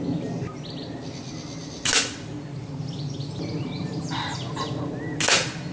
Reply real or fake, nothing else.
real